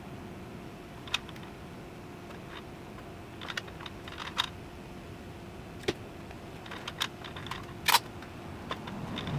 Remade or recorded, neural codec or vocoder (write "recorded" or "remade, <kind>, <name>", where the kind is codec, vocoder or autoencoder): recorded